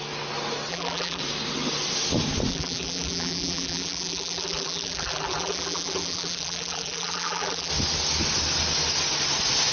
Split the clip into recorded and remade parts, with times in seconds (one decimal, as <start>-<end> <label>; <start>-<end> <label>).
0.0-0.7 recorded; 0.7-1.2 remade; 1.2-2.5 recorded; 2.5-7.7 remade; 7.7-9.7 recorded